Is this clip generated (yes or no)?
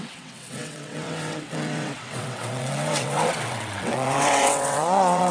yes